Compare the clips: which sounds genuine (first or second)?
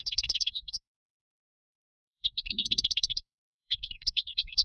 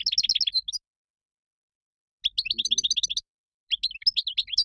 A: second